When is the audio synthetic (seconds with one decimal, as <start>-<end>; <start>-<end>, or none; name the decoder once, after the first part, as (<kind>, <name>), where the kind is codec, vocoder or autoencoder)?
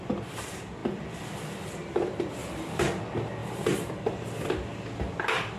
2.4-2.9 (vocoder, BigVGAN v2); 3.4-3.9